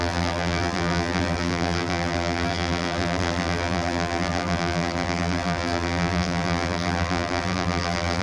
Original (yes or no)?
no